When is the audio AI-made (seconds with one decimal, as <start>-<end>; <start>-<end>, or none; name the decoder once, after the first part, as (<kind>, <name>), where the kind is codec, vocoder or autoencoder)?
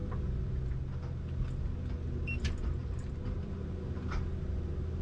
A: 2.8-3.5 (vocoder, BigVGAN v2)